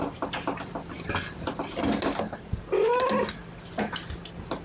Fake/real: real